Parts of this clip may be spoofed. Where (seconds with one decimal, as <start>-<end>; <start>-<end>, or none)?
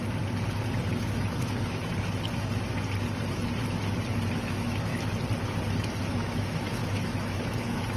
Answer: 0.9-1.9; 4.3-4.9; 6.1-8.0